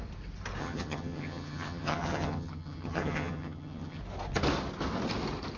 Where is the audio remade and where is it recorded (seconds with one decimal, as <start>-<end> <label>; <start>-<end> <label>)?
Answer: 0.0-0.6 recorded; 0.6-4.0 remade; 4.0-5.6 recorded